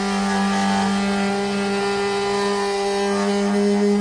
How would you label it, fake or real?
real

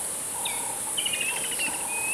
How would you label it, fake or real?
real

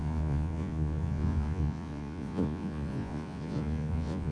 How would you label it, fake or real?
fake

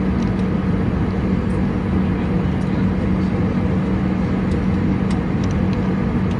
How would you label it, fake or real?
real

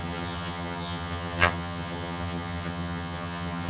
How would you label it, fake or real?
fake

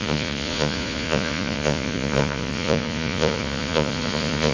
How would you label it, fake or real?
fake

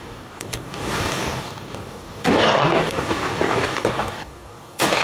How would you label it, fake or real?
fake